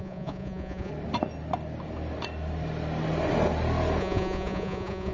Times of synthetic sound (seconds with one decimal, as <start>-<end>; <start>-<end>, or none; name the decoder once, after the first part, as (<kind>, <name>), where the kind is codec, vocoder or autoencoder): 0.0-0.9 (vocoder, Vocos); 4.0-5.1